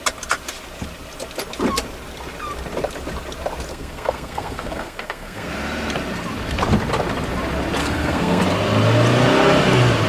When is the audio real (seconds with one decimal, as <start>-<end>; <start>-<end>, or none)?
0.0-3.7; 5.5-7.8; 8.4-10.1